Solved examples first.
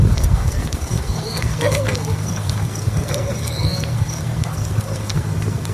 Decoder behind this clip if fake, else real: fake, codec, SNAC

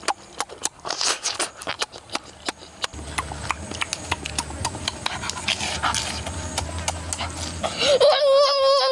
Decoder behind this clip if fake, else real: real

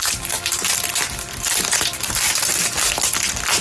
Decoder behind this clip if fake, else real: real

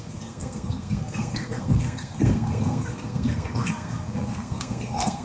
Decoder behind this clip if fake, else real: fake, codec, SNAC